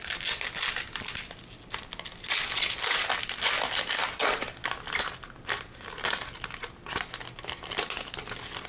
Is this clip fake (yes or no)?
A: no